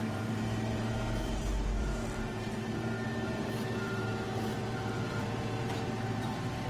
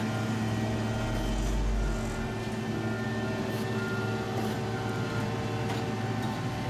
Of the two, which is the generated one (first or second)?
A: first